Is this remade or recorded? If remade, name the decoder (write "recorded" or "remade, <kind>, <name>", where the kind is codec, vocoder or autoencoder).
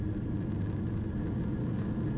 recorded